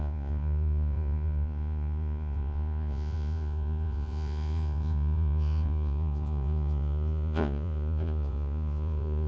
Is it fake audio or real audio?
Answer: fake